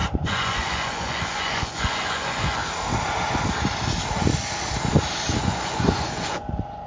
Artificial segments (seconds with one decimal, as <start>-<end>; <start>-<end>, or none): 0.0-2.6; 5.4-6.9